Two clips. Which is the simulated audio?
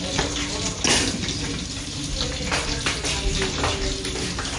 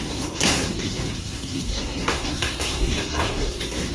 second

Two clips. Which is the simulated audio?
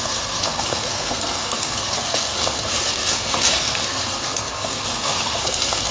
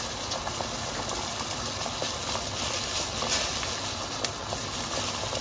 first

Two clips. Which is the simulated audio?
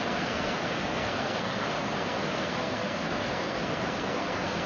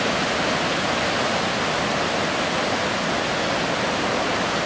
first